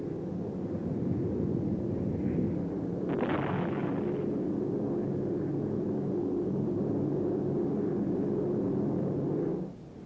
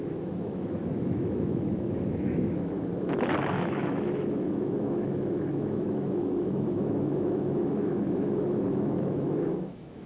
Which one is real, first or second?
first